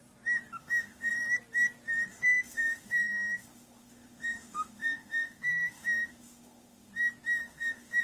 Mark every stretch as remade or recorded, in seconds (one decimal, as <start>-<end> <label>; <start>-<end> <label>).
0.0-0.6 recorded; 0.6-1.1 remade; 1.1-2.1 recorded; 2.1-6.9 remade; 6.9-7.4 recorded; 7.4-8.0 remade